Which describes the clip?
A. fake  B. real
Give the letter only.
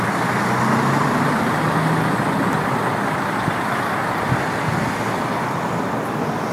B